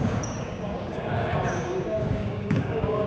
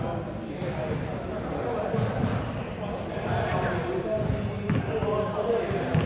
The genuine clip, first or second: second